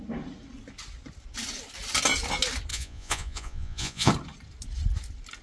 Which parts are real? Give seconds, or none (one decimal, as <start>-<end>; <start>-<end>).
0.0-2.7; 4.1-5.4